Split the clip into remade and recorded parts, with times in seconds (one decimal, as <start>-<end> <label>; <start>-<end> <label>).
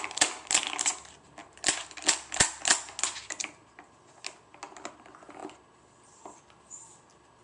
0.0-7.4 recorded